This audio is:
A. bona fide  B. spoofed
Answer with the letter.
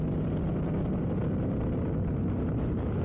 A